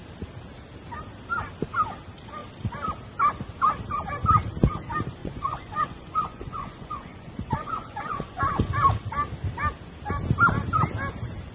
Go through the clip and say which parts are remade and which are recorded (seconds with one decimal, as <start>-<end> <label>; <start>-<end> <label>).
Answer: 0.0-5.2 recorded; 5.2-8.7 remade; 8.7-11.5 recorded